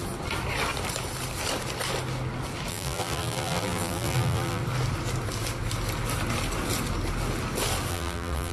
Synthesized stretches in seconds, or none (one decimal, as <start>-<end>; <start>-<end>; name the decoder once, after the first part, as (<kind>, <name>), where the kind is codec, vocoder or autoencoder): 2.7-4.6 (vocoder, BigVGAN v2); 7.9-8.5